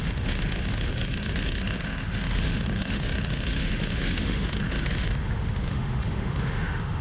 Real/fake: fake